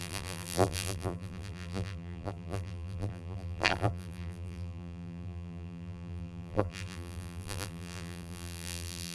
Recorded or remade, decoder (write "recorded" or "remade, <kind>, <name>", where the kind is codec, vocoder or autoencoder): remade, vocoder, BigVGAN v2